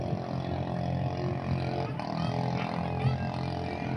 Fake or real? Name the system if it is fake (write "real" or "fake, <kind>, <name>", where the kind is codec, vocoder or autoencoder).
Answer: real